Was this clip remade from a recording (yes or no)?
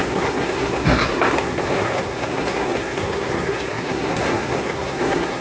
yes